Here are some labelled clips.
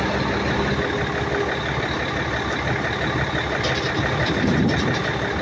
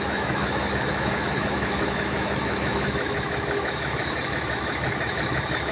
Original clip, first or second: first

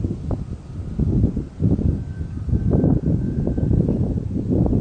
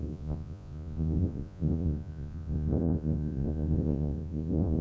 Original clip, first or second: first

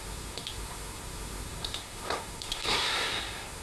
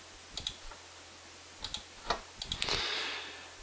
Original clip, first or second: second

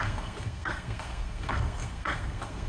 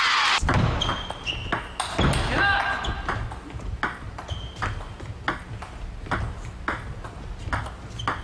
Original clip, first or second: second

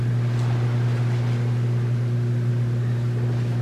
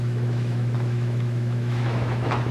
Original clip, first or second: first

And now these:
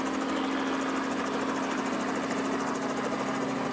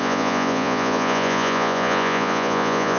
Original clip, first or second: first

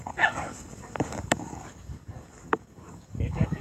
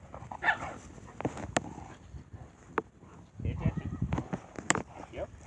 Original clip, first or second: second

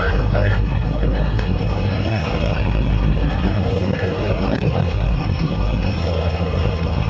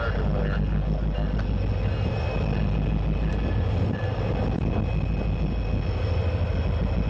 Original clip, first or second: second